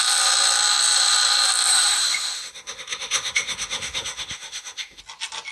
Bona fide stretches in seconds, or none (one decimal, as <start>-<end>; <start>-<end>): 0.0-1.7; 5.0-5.5